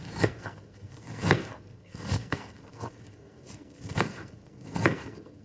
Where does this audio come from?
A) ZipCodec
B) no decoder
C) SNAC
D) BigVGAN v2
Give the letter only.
C